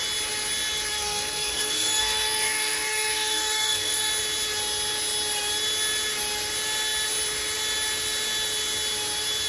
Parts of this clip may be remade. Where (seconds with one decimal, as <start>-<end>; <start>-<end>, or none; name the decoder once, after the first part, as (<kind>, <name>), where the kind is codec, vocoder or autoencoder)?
0.9-4.1 (codec, SNAC)